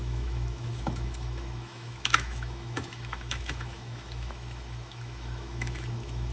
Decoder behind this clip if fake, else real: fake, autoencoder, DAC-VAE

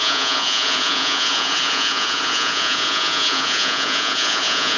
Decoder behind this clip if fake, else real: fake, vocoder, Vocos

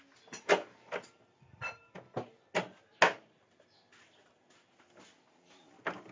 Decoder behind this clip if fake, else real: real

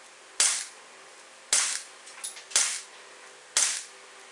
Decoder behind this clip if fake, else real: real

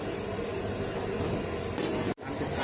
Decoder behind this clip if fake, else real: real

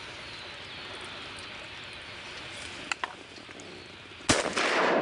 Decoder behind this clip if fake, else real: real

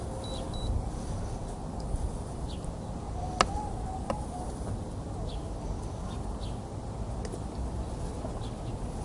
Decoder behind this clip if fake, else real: real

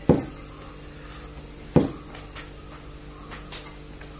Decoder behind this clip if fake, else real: real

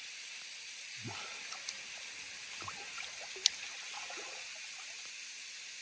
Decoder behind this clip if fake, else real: real